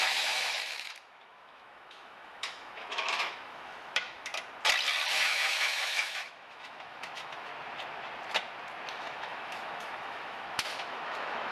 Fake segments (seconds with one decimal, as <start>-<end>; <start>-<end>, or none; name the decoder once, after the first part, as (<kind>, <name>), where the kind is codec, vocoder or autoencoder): 0.0-4.3 (autoencoder, DAC-VAE); 5.1-7.5; 8.9-11.5